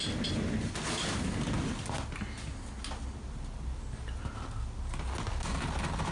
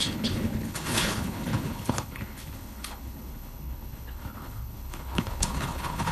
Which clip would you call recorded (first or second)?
first